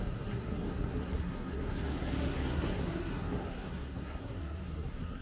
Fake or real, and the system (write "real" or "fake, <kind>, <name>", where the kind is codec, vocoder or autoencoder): fake, codec, SNAC